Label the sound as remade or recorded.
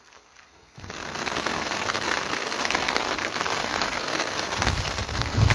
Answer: remade